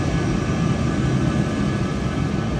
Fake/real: fake